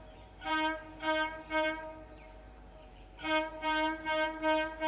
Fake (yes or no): yes